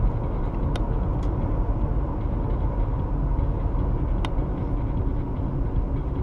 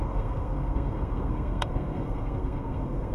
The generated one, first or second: second